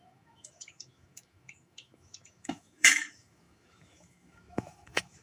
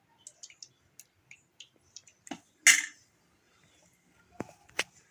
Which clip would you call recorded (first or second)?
second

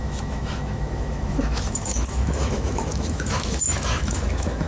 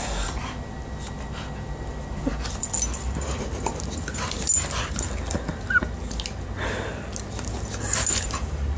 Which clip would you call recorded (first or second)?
second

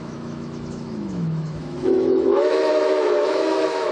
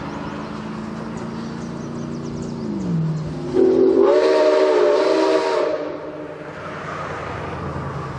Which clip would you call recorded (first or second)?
second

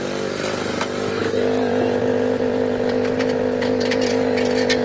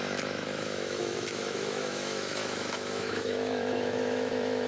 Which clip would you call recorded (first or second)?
first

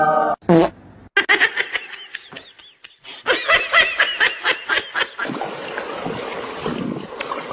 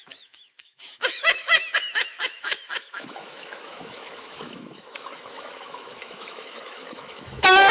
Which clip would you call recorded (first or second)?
first